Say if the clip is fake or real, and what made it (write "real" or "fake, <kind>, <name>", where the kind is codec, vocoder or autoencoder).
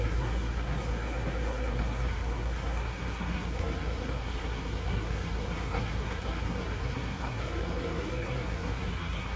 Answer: fake, codec, SNAC